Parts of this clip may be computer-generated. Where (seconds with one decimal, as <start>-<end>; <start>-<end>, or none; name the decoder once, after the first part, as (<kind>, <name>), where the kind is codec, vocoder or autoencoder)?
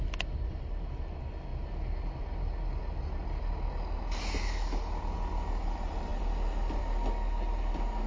none